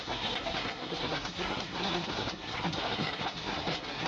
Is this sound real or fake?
fake